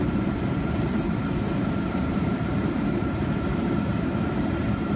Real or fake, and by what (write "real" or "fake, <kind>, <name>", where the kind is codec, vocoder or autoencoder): fake, vocoder, BigVGAN v2